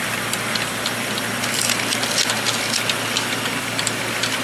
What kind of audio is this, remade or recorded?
recorded